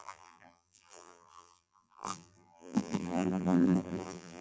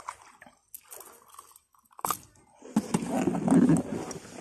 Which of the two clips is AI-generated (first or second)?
first